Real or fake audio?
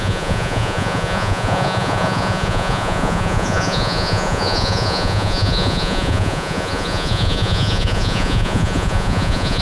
fake